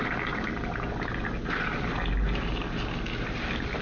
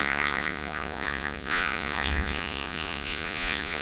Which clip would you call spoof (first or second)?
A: second